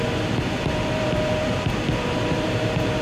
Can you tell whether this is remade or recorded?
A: remade